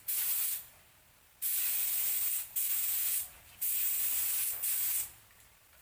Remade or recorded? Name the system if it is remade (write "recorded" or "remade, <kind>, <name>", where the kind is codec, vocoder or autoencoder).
remade, vocoder, BigVGAN v2